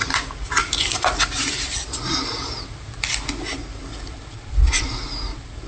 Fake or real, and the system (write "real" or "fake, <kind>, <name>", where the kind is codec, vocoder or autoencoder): real